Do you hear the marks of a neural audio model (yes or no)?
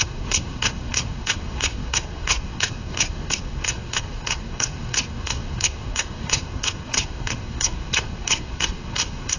yes